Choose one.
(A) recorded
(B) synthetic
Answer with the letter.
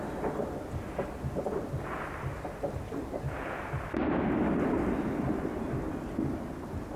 A